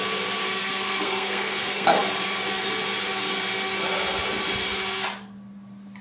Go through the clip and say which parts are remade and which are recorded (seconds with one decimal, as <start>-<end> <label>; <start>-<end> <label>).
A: 0.0-0.4 recorded; 0.4-2.0 remade; 2.0-6.0 recorded